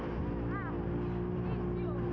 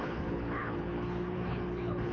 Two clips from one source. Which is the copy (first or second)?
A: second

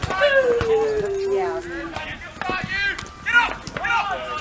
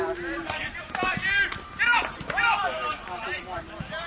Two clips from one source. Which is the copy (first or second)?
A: second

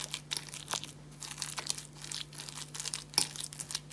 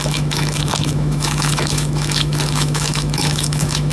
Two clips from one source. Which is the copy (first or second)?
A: second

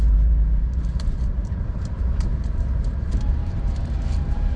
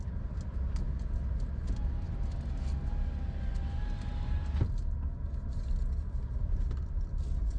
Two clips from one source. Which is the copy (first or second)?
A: first